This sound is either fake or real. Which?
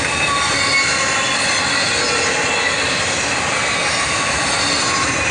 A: real